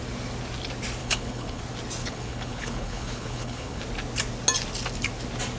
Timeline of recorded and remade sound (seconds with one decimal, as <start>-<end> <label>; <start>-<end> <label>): 0.0-1.0 recorded; 1.0-1.6 remade; 1.6-2.0 recorded; 2.0-3.8 remade; 3.8-5.6 recorded